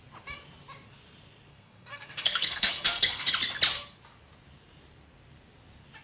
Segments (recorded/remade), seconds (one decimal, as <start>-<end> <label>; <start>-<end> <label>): 0.0-1.5 recorded; 1.5-3.3 remade; 3.3-6.0 recorded